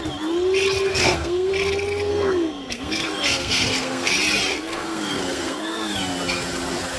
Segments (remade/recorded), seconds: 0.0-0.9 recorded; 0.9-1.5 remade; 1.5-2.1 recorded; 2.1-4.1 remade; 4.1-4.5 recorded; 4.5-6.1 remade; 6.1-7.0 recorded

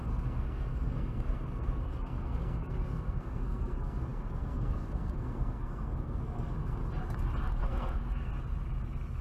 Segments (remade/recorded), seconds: 0.0-6.8 remade; 6.8-7.6 recorded; 7.6-8.3 remade; 8.3-9.2 recorded

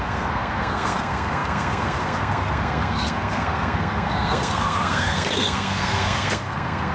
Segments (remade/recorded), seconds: 0.0-6.9 remade